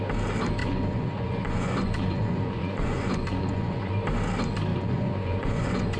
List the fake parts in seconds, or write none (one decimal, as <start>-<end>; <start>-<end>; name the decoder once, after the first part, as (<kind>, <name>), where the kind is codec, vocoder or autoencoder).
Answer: 0.6-3.9 (vocoder, Vocos); 4.7-6.0